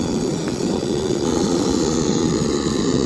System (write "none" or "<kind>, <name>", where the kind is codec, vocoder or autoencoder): vocoder, Vocos